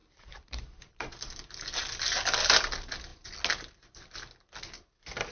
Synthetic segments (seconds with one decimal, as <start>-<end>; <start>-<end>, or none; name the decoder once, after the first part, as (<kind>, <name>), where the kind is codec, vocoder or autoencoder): 0.0-0.9 (vocoder, BigVGAN v2)